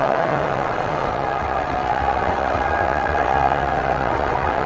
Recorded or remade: remade